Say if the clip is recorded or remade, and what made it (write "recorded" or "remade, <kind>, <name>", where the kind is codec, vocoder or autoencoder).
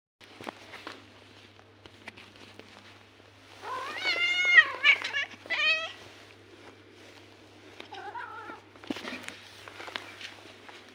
recorded